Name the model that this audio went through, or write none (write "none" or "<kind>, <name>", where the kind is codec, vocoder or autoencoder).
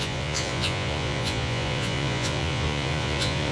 vocoder, Vocos